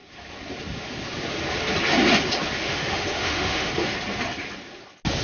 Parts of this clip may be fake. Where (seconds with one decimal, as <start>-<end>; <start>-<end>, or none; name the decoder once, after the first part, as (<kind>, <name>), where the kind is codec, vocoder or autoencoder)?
2.6-3.7 (autoencoder, DAC-VAE)